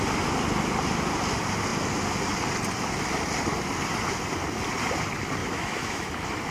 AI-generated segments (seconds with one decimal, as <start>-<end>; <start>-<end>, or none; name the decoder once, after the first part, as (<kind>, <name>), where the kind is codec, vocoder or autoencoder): 5.4-6.1 (autoencoder, DAC-VAE)